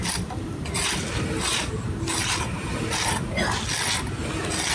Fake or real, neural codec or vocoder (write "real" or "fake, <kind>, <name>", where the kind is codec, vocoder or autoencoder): real